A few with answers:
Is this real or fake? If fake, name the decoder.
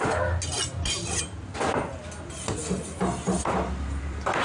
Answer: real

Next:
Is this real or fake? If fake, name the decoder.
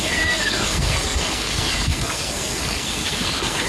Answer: fake, codec, SNAC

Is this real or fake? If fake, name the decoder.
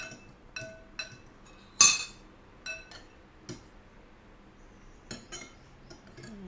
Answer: real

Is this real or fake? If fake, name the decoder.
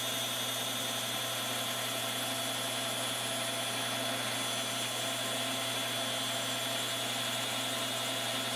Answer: real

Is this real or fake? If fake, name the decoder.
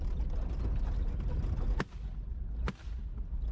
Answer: real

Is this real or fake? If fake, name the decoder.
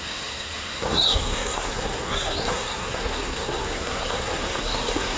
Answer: fake, codec, SNAC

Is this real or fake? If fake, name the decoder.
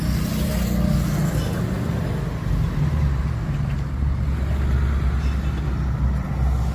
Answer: real